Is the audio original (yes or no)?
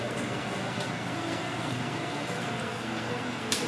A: no